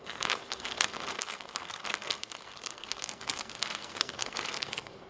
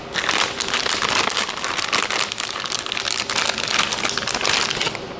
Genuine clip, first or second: second